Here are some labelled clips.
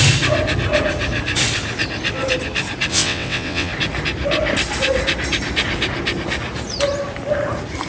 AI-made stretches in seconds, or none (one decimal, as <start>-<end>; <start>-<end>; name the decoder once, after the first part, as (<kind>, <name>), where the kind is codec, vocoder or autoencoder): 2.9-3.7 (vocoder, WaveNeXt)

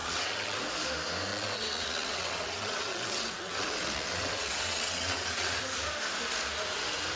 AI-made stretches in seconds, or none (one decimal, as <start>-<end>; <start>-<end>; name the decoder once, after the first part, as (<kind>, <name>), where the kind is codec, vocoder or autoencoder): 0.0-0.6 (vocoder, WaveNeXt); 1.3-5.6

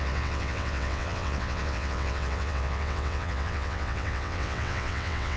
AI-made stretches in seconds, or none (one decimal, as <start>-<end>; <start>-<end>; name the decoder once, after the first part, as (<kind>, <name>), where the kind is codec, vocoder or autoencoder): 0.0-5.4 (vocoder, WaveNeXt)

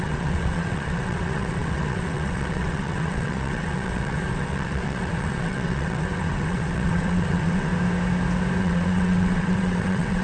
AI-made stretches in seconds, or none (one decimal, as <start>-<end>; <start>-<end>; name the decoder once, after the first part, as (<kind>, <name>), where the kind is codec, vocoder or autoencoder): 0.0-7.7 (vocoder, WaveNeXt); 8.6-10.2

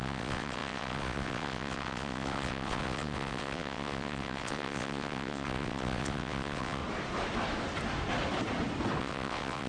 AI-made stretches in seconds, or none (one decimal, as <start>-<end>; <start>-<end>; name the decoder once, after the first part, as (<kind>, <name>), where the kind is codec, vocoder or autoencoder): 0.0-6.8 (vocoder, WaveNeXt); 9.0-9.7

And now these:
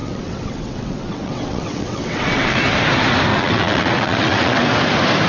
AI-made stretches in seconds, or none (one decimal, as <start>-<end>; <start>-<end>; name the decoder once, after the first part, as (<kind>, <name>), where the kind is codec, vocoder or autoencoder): 0.0-2.6 (vocoder, WaveNeXt); 3.3-4.6

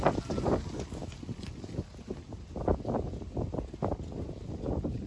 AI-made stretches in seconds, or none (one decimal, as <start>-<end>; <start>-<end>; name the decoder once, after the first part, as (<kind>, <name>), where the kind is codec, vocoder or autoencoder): none

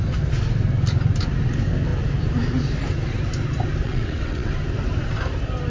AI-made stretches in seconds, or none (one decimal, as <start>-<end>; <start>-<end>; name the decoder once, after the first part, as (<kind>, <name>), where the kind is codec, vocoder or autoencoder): 3.8-4.5 (vocoder, WaveNeXt)